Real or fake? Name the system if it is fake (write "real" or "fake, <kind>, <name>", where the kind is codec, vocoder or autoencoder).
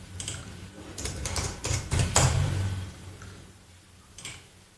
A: fake, vocoder, BigVGAN v2